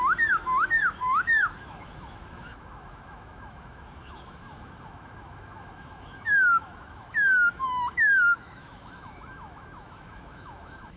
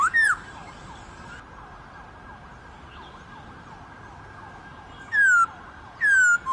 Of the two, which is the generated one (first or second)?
first